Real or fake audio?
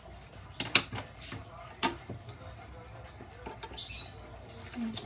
real